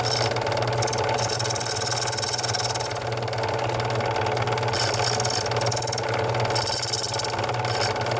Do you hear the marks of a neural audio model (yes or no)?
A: no